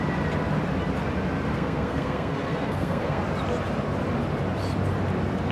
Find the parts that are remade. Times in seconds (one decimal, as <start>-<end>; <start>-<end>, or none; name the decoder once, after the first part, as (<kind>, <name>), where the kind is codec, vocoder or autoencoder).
1.5-3.2 (codec, SNAC)